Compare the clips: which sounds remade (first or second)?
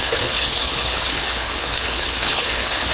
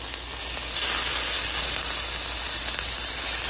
first